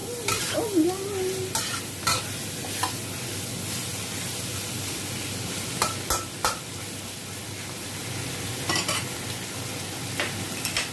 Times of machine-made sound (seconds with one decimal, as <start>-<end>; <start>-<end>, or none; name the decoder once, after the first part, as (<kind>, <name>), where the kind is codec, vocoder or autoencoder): none